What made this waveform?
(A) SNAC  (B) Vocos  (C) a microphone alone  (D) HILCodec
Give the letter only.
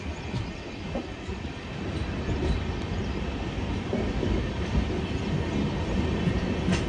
C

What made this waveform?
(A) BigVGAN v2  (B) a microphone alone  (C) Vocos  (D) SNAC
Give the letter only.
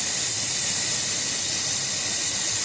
B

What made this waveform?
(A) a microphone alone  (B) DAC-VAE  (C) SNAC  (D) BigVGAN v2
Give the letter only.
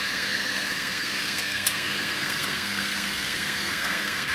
C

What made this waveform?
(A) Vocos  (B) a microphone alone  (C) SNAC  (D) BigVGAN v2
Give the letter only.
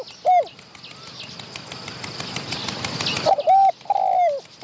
B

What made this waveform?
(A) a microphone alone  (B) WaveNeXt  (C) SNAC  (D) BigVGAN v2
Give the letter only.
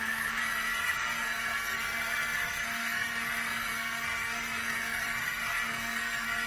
C